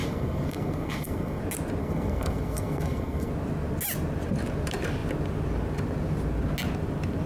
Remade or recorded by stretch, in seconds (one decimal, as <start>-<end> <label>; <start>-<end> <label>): 0.0-1.4 remade; 1.4-1.8 recorded; 1.8-3.3 remade; 3.3-7.3 recorded